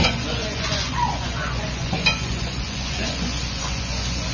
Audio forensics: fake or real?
fake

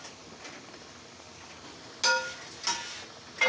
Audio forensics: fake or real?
real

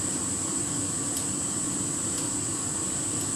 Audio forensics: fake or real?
real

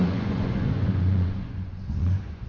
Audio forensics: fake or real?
fake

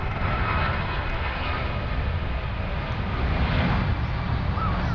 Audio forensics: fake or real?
real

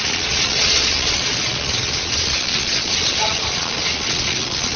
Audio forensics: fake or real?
fake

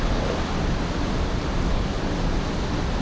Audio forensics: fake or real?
real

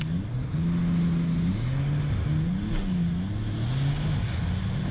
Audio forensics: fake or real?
real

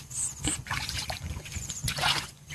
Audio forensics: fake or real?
fake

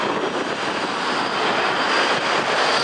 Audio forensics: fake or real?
real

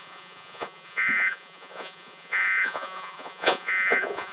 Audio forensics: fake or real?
fake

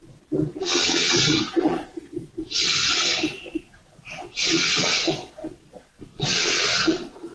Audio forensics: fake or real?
fake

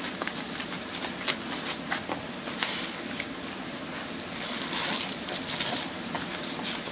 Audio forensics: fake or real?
real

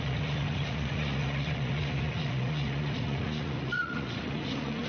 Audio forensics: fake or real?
fake